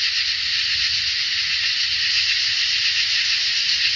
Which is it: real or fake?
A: real